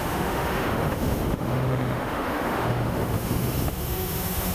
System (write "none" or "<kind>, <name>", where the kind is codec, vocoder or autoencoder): autoencoder, DAC-VAE